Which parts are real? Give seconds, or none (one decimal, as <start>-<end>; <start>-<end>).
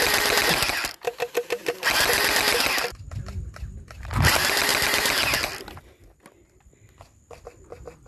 0.0-1.6; 2.2-4.7